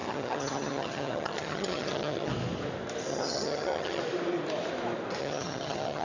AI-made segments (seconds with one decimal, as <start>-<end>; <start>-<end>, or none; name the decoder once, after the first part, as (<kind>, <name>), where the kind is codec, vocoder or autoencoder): 0.0-2.3 (vocoder, HiFi-GAN); 3.1-4.0; 5.2-6.0